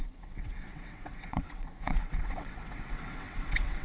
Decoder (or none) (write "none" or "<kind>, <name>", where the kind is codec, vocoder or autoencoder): vocoder, WaveNeXt